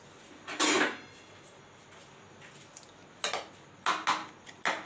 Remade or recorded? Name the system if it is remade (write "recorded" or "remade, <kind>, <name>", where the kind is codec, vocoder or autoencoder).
recorded